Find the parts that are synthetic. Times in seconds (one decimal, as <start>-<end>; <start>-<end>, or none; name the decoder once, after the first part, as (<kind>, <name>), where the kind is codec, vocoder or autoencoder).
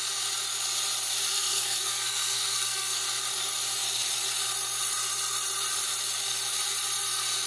1.3-3.0 (codec, SNAC)